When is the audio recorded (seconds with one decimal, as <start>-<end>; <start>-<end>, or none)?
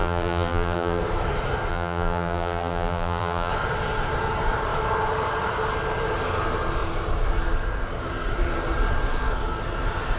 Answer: 1.0-1.7; 3.5-10.2